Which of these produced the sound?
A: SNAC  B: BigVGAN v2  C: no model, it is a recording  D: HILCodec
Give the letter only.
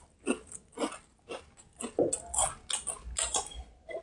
C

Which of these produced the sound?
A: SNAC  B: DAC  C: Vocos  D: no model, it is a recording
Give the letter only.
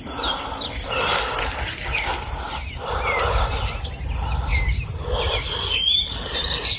D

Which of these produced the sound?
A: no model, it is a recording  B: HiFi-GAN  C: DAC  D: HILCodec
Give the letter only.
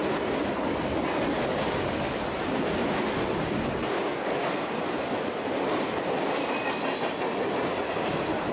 A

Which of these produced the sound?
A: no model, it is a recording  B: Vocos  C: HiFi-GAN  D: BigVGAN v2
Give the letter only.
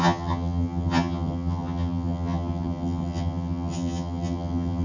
C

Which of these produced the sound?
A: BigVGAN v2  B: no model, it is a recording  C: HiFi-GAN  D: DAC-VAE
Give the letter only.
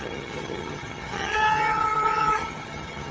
C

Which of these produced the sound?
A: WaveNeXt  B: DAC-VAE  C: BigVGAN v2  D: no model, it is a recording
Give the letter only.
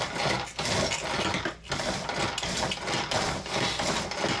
D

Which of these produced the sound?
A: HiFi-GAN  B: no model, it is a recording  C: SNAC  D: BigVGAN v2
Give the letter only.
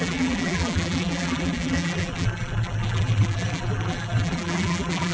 D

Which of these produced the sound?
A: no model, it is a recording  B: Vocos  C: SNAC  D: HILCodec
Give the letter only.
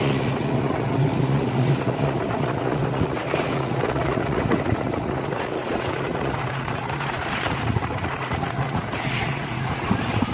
B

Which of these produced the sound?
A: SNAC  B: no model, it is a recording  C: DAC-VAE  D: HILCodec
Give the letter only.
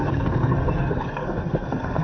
A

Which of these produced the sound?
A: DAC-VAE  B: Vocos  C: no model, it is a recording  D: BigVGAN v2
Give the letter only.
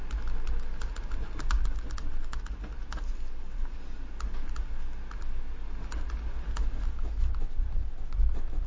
C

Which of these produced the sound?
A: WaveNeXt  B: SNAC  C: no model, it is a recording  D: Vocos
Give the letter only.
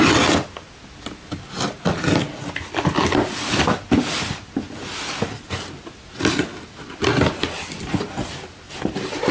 C